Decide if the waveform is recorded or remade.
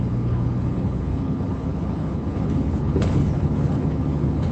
remade